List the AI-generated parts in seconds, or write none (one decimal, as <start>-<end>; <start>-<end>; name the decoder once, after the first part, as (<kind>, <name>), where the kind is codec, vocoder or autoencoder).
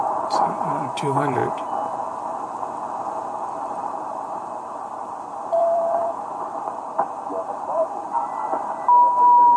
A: 0.0-1.4 (vocoder, BigVGAN v2); 3.5-9.6